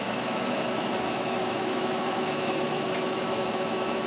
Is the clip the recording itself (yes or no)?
no